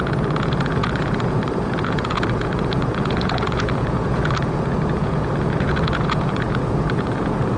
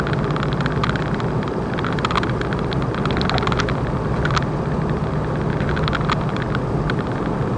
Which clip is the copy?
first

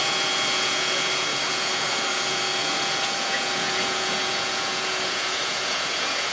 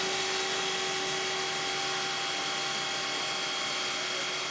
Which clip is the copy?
first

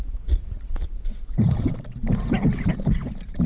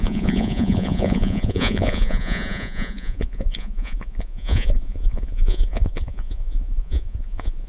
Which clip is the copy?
second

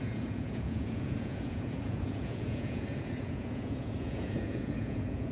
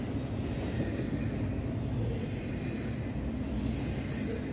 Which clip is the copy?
first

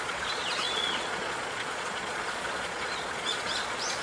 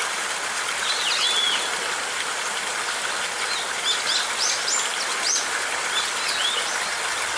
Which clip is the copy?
first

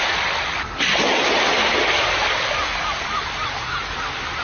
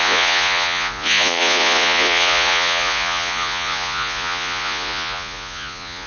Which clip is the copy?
second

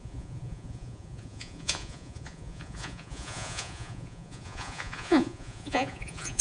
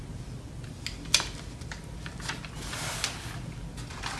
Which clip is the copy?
first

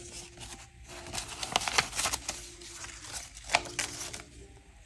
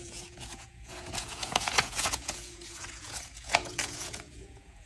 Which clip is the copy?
second